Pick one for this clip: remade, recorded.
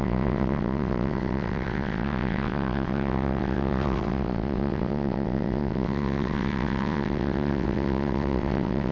remade